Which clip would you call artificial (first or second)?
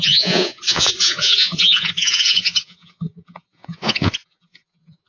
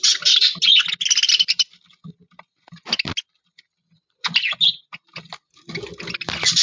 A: first